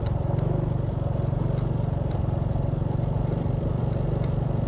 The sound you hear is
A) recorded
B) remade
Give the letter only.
A